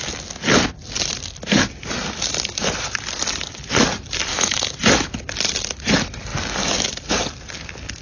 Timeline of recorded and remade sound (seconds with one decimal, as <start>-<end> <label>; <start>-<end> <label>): 0.0-4.3 recorded; 4.3-5.1 remade; 5.1-8.0 recorded